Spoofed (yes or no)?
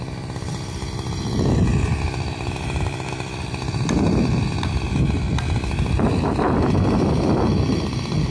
no